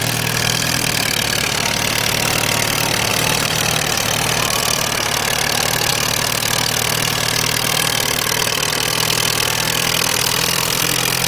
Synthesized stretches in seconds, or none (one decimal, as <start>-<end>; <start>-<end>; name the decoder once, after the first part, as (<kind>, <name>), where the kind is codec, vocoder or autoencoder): 3.1-4.6 (vocoder, BigVGAN v2); 10.1-10.8